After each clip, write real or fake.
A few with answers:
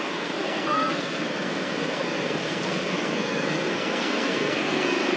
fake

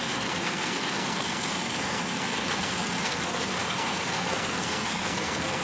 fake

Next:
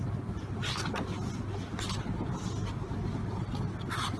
real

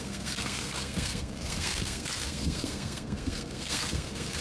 fake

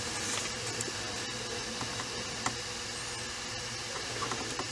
real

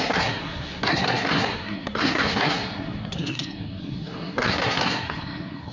fake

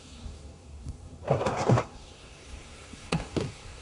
fake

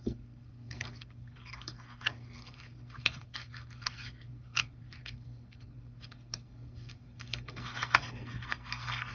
fake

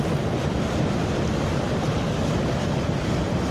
real